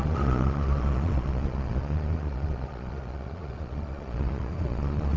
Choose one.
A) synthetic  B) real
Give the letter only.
A